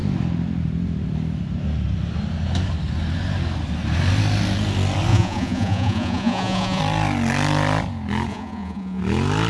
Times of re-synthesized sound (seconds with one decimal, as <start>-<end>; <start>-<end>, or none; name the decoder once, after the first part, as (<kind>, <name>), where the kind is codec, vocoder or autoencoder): 5.1-6.8 (vocoder, Vocos); 8.3-9.0